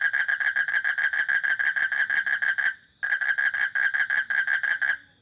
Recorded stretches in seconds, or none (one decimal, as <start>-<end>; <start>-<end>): 0.0-5.2